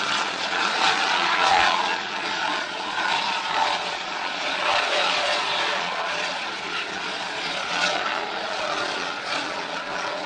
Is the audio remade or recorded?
remade